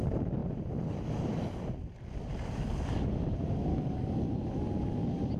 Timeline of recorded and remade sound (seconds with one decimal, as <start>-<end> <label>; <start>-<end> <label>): 0.0-3.7 recorded; 3.7-4.3 remade; 4.3-5.4 recorded